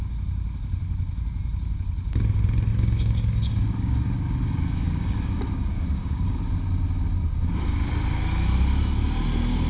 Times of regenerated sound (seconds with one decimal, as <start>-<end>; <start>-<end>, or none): 2.7-6.4